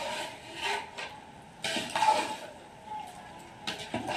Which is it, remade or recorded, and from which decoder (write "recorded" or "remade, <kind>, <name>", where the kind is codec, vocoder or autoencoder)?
recorded